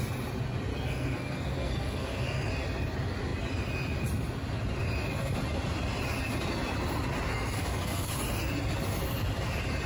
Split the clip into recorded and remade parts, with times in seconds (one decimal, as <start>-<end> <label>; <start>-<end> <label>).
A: 0.0-0.7 recorded; 0.7-2.5 remade; 2.5-7.3 recorded; 7.3-8.1 remade; 8.1-9.9 recorded